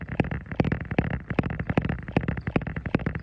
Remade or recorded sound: recorded